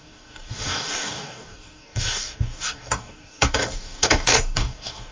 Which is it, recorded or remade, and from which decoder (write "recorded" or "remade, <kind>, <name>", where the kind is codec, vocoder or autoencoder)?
remade, codec, DAC